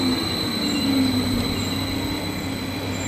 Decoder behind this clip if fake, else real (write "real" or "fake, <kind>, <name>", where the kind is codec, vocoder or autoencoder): real